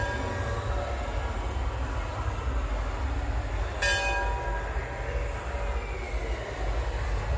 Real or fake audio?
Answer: real